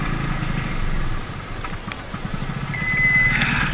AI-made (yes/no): no